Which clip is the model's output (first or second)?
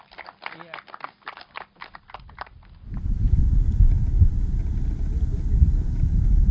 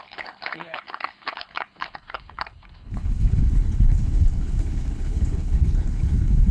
second